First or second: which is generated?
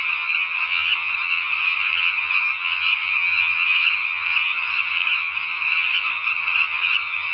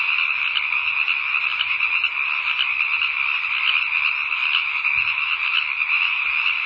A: first